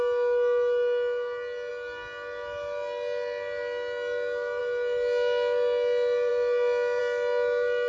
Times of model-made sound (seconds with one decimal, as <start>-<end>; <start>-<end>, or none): none